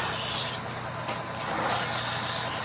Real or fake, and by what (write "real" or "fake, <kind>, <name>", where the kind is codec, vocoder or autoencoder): real